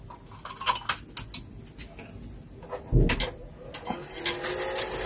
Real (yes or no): yes